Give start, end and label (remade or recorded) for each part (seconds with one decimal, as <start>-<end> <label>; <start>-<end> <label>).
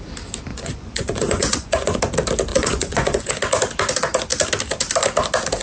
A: 0.0-0.5 recorded; 0.5-2.0 remade; 2.0-2.5 recorded; 2.5-3.3 remade; 3.3-5.6 recorded